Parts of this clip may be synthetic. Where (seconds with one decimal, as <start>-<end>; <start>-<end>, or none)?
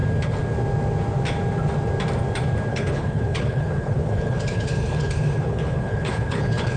2.7-6.8